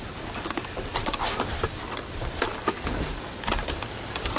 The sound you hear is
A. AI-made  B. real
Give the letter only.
B